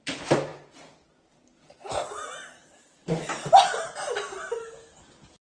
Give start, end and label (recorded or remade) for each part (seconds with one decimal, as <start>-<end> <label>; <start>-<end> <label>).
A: 0.0-5.5 recorded